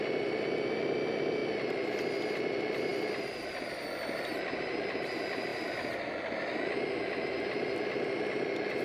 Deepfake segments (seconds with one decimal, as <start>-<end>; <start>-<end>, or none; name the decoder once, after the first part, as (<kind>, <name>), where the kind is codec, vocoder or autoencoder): none

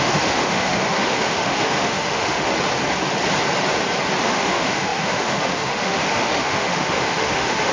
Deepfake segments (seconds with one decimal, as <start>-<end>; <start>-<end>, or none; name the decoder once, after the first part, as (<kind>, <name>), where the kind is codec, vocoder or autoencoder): 0.0-2.5 (autoencoder, DAC-VAE); 4.2-7.7

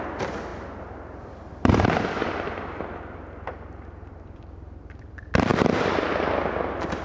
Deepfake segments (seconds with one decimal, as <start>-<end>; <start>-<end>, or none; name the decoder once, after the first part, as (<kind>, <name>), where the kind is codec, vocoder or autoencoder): 0.0-7.0 (vocoder, BigVGAN v2)